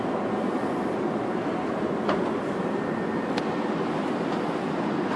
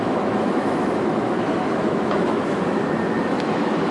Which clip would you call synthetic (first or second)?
second